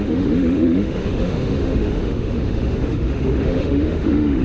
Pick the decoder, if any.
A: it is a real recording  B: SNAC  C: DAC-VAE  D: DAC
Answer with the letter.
C